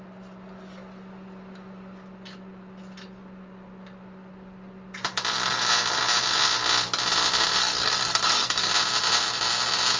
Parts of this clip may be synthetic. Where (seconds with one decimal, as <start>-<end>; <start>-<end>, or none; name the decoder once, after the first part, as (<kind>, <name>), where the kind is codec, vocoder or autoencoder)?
7.6-8.7 (codec, SNAC)